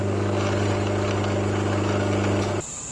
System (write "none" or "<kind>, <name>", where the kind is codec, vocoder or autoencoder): none